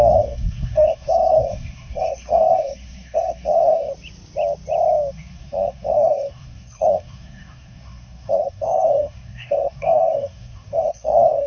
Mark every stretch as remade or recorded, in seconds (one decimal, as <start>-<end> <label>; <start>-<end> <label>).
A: 0.0-3.9 remade; 3.9-5.1 recorded; 5.1-11.5 remade